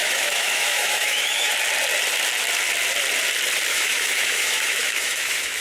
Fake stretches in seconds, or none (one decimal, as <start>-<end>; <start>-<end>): 0.0-1.5; 3.7-5.6